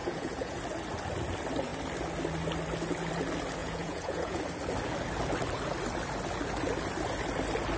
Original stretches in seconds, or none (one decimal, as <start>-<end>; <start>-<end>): 0.6-3.6; 4.4-7.8